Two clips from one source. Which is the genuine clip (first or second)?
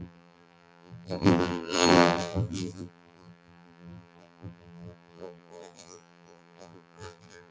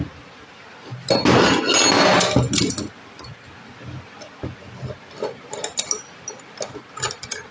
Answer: second